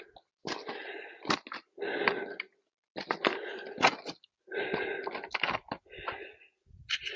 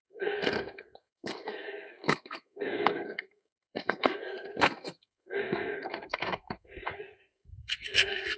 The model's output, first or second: second